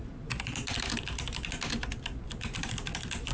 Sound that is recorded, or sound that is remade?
recorded